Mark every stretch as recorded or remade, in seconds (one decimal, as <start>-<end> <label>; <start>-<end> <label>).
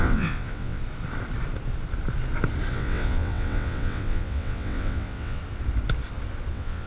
0.0-0.8 remade; 0.8-2.7 recorded; 2.7-5.4 remade; 5.4-6.5 recorded; 6.5-6.9 remade